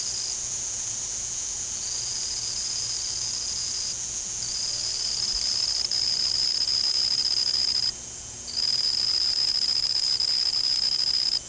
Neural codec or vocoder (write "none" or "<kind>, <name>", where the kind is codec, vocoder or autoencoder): vocoder, Vocos